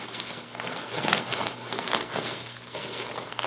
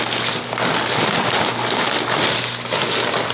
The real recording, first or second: second